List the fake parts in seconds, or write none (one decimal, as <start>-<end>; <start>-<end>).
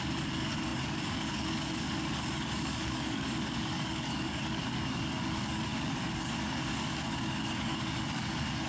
0.0-8.7